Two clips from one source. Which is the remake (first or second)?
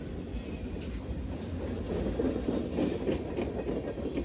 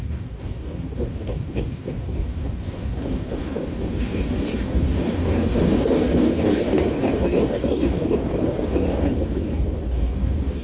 second